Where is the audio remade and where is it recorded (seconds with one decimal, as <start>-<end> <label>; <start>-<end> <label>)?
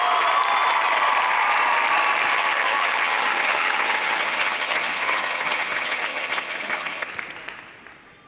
0.0-2.3 recorded; 2.3-7.1 remade; 7.1-8.3 recorded